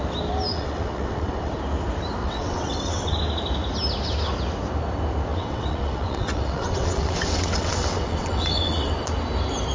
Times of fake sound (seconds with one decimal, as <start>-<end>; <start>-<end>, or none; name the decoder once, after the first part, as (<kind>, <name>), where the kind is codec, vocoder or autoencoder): 0.5-1.5 (vocoder, WaveNeXt); 2.2-3.2; 5.3-8.9